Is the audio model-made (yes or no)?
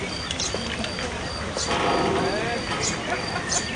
no